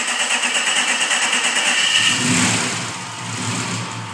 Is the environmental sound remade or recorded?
recorded